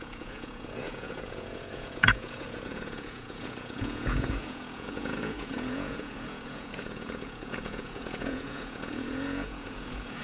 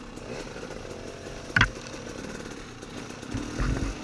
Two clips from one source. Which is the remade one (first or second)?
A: first